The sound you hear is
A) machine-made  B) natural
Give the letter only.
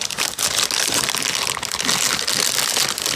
B